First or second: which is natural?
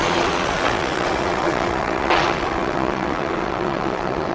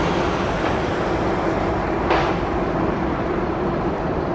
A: second